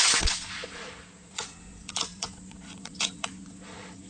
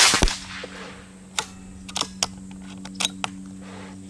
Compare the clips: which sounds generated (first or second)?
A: first